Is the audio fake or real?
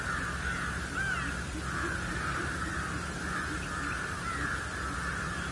real